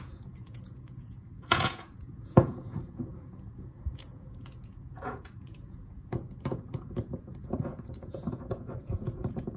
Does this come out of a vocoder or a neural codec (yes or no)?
yes